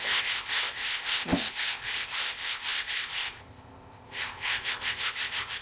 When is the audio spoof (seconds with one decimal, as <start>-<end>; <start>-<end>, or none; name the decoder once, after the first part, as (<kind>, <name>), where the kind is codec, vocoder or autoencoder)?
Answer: 0.0-5.6 (codec, ZipCodec)